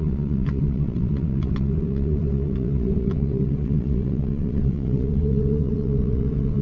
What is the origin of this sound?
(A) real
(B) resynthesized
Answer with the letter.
B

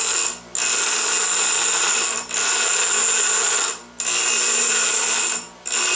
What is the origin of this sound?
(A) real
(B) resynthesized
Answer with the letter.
A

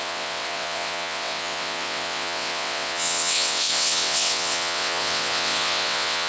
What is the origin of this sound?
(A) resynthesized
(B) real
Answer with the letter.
A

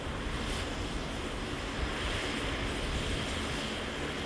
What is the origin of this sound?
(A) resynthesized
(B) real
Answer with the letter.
B